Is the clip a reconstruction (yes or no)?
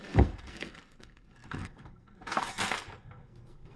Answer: yes